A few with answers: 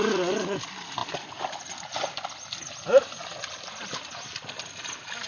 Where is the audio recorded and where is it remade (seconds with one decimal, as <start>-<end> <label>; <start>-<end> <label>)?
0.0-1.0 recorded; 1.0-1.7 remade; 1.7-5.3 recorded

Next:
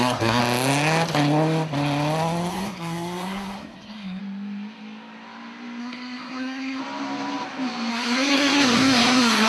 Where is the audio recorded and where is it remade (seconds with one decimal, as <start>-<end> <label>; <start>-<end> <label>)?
0.0-0.4 remade; 0.4-2.5 recorded; 2.5-4.2 remade; 4.2-5.8 recorded; 5.8-6.8 remade; 6.8-7.9 recorded; 7.9-9.5 remade

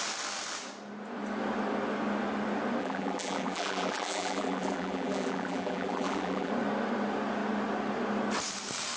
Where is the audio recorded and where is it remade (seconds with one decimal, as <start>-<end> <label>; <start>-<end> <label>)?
0.0-2.8 recorded; 2.8-6.5 remade; 6.5-9.0 recorded